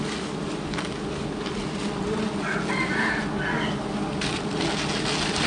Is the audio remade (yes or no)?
no